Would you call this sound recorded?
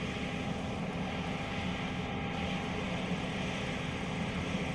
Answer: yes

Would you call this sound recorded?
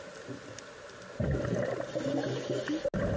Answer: yes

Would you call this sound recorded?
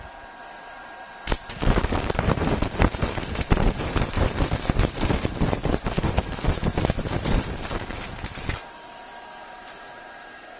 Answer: no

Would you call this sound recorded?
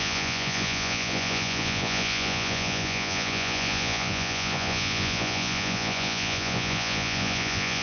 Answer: no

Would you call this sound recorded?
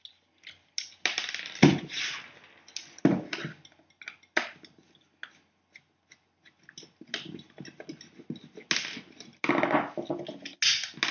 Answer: yes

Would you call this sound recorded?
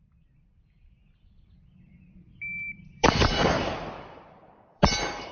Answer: no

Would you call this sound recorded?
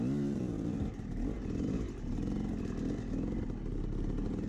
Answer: yes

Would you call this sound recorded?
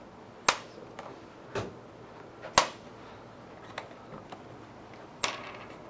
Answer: yes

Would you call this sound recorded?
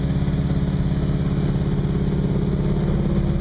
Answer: yes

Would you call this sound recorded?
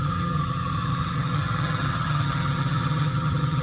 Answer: no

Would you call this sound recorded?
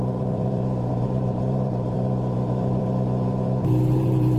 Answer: no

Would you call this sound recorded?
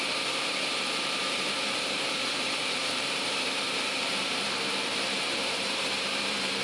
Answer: no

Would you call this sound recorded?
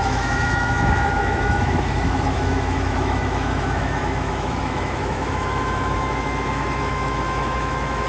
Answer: no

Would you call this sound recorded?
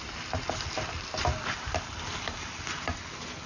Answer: yes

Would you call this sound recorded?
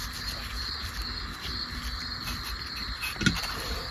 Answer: yes